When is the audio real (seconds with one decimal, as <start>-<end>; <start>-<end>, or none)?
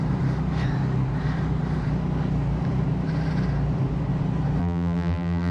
0.0-4.6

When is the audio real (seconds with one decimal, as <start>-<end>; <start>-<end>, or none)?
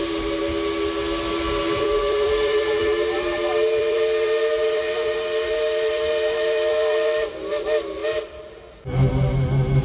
0.4-1.3; 8.0-9.8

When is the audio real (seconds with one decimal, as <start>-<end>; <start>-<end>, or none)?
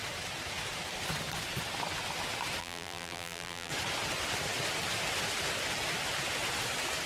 0.0-2.6; 3.7-7.1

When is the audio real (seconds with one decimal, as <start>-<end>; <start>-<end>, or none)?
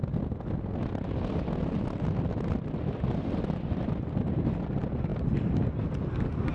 0.0-6.5